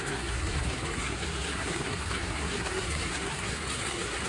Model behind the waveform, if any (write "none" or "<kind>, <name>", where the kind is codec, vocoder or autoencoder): codec, SNAC